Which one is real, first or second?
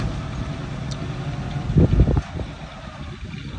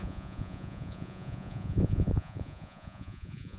first